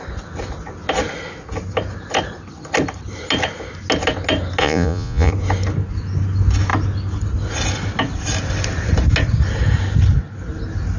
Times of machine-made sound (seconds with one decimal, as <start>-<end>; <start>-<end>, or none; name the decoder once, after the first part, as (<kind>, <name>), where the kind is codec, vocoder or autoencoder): 4.6-5.3 (vocoder, Vocos)